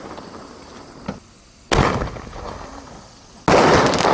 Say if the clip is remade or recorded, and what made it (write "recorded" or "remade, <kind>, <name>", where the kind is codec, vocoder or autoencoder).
recorded